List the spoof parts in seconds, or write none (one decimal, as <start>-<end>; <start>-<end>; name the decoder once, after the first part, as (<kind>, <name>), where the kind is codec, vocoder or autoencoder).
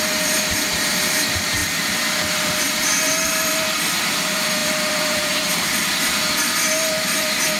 0.0-1.6 (vocoder, BigVGAN v2); 2.3-7.6